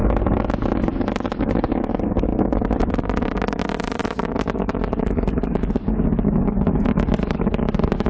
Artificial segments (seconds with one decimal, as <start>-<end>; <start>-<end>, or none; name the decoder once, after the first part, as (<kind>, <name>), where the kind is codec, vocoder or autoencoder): 0.0-8.1 (codec, DAC)